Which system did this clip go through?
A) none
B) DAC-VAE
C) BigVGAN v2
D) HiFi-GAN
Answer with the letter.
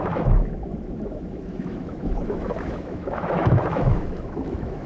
B